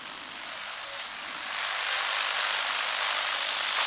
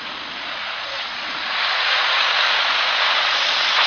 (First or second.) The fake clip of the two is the second